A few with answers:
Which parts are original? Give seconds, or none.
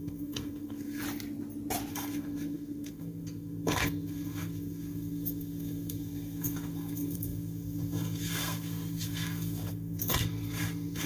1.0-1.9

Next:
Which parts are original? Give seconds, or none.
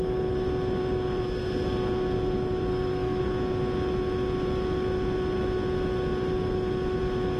0.0-2.7; 3.2-7.4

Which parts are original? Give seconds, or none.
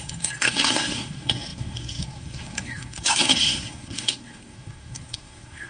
none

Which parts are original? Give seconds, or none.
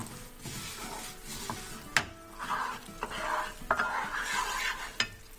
0.0-5.4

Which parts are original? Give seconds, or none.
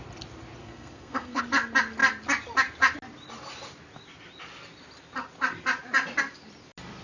0.0-0.6; 1.4-7.0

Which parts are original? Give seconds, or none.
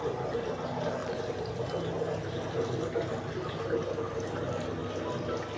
0.0-5.6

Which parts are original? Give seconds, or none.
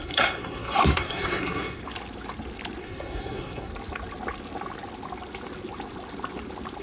1.8-2.8; 3.7-6.8